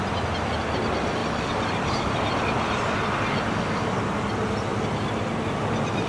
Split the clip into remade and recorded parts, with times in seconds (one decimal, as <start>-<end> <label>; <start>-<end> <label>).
0.0-6.1 recorded